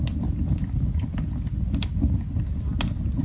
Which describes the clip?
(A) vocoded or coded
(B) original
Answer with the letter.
B